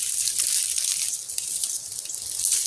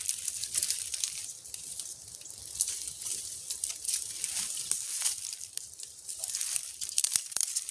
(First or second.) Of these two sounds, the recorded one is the first